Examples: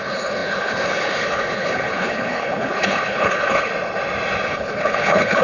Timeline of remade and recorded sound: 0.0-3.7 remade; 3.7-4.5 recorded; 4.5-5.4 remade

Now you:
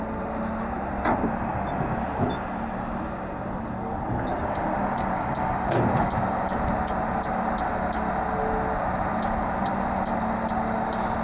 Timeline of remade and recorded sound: 0.0-11.2 recorded

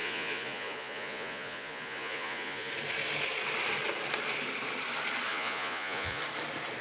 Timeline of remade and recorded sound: 0.0-2.7 remade; 2.7-5.3 recorded; 5.3-6.2 remade; 6.2-6.8 recorded

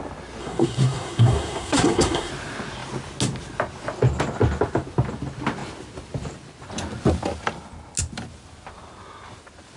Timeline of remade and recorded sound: 0.0-0.4 recorded; 0.4-2.3 remade; 2.3-9.8 recorded

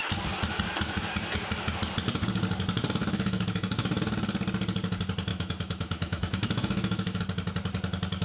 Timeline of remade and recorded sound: 0.0-3.0 recorded; 3.0-4.0 remade; 4.0-5.3 recorded; 5.3-7.2 remade; 7.2-8.2 recorded